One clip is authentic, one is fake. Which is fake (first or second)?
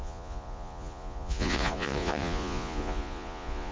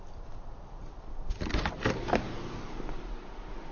first